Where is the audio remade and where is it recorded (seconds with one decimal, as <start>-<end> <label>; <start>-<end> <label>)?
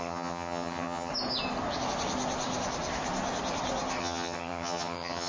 0.0-1.1 remade; 1.1-4.0 recorded; 4.0-5.3 remade